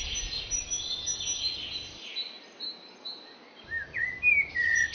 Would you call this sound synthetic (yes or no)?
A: no